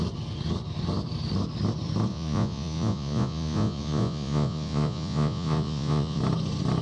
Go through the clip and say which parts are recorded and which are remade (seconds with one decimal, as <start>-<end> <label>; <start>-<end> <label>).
0.0-2.1 recorded; 2.1-6.2 remade; 6.2-6.8 recorded